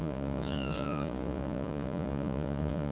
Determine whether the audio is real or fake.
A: fake